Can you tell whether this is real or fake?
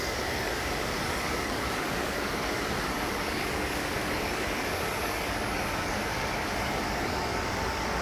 fake